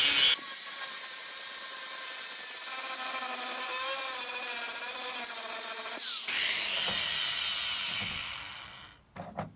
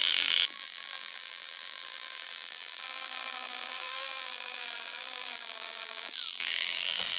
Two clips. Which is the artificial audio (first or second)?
second